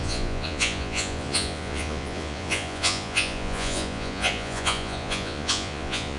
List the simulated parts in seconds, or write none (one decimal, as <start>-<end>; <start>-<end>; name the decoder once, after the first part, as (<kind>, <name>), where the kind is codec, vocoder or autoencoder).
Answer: 0.0-6.2 (vocoder, Vocos)